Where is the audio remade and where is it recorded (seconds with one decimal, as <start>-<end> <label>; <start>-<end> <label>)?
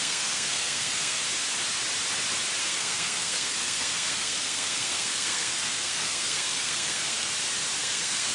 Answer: 0.0-1.2 remade; 1.2-2.6 recorded; 2.6-7.3 remade; 7.3-7.8 recorded; 7.8-8.3 remade